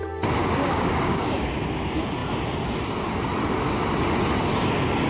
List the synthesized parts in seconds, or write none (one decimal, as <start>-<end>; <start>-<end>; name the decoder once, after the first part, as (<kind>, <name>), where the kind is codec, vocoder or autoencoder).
0.4-1.5 (codec, DAC)